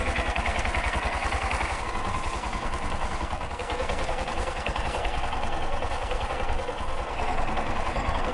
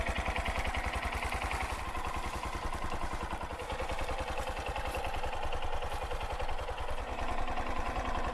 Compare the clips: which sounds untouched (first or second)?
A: second